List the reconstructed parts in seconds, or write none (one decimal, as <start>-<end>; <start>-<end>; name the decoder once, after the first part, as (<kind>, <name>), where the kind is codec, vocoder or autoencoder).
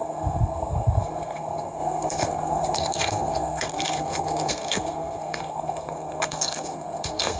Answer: 0.0-7.4 (codec, SNAC)